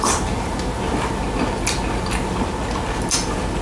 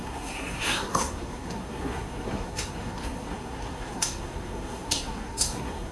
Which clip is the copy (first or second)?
second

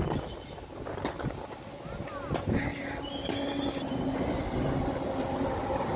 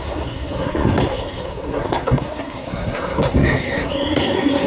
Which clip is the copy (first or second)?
second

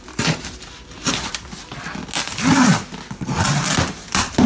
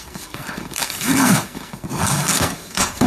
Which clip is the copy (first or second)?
second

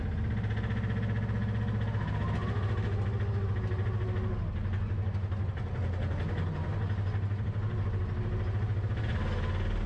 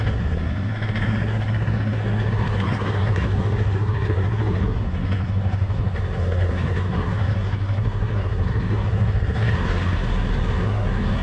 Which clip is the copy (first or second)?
second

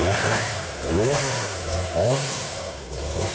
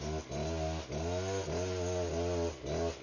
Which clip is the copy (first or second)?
first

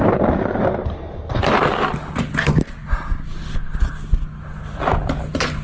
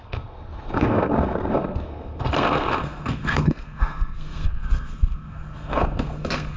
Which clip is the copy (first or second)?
second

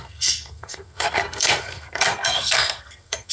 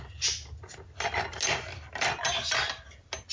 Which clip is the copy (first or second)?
first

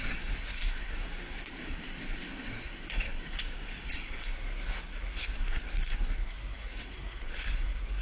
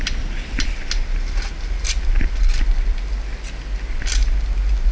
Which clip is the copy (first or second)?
first